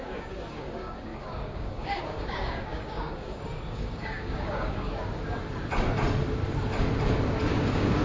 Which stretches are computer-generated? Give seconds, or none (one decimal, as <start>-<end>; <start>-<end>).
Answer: 0.0-4.9; 7.5-8.0